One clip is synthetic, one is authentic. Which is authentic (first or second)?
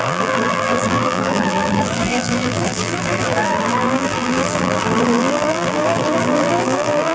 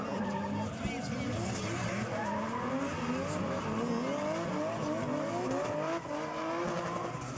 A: second